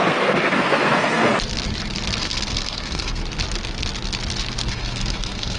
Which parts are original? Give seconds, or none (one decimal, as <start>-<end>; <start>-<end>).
1.3-2.2; 3.2-4.7